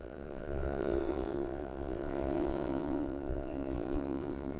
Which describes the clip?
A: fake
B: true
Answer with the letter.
A